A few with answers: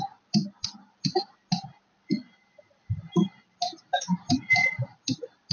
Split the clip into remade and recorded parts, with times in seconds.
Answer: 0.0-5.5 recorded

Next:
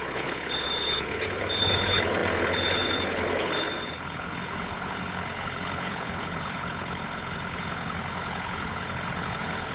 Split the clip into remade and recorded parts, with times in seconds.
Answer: 0.0-9.7 remade

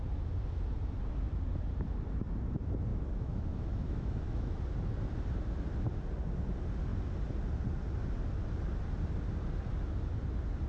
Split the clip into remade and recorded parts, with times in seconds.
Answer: 0.0-2.9 recorded; 2.9-4.5 remade; 4.5-10.7 recorded

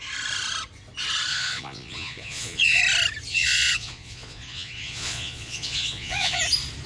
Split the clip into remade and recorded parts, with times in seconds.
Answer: 0.0-1.3 recorded; 1.3-2.8 remade; 2.8-3.3 recorded; 3.3-6.4 remade; 6.4-6.9 recorded

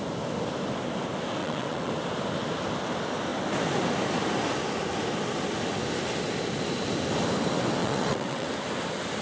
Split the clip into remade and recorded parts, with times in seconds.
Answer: 0.0-1.4 recorded; 1.4-1.9 remade; 1.9-7.8 recorded; 7.8-8.5 remade; 8.5-9.2 recorded

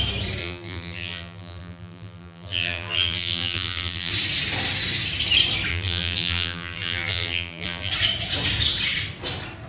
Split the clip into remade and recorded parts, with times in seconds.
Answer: 0.0-0.4 recorded; 0.4-4.1 remade; 4.1-5.7 recorded; 5.7-7.9 remade; 7.9-9.7 recorded

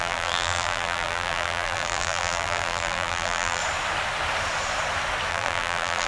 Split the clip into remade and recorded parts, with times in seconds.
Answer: 0.0-3.6 remade; 3.6-5.3 recorded; 5.3-6.1 remade

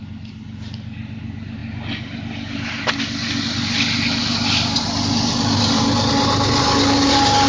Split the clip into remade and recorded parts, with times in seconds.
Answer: 0.0-7.5 recorded